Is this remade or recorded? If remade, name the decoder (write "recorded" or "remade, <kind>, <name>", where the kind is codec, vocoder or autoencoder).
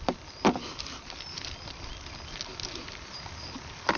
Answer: recorded